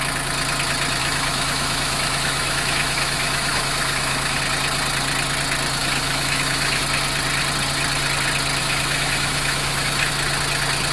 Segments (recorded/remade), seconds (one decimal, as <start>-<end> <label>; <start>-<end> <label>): 0.0-1.0 recorded; 1.0-4.4 remade; 4.4-5.8 recorded; 5.8-6.8 remade; 6.8-8.6 recorded; 8.6-10.1 remade; 10.1-10.9 recorded